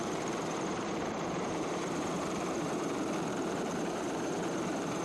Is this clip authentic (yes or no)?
no